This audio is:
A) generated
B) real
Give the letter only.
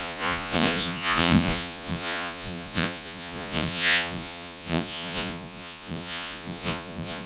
A